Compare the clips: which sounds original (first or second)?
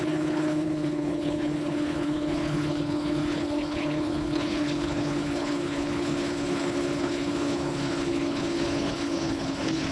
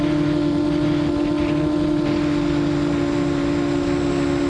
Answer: second